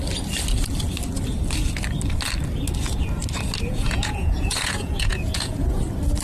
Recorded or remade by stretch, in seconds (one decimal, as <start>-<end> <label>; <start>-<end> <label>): 0.0-3.7 recorded; 3.7-5.8 remade; 5.8-6.2 recorded